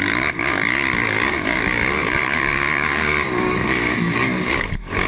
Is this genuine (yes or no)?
no